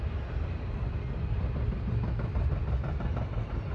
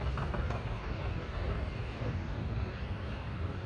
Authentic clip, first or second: first